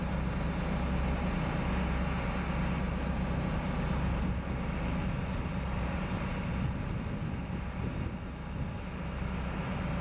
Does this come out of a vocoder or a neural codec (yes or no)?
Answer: no